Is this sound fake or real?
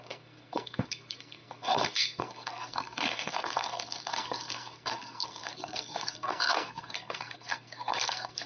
fake